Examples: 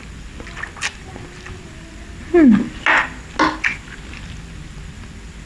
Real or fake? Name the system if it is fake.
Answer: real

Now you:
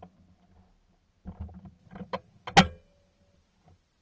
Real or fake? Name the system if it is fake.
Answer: real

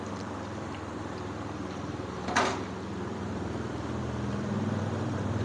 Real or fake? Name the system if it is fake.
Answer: fake, vocoder, BigVGAN v2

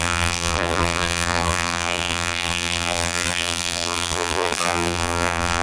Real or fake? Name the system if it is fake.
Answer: fake, vocoder, BigVGAN v2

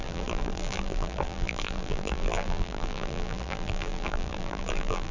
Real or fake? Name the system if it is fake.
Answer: fake, vocoder, BigVGAN v2